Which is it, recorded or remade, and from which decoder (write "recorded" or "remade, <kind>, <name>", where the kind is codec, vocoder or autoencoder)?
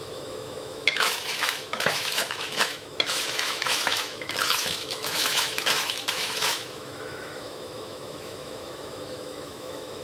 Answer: remade, autoencoder, DAC-VAE